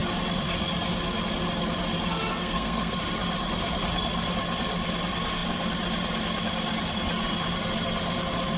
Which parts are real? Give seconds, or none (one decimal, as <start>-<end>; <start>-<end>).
0.0-2.3; 3.0-8.6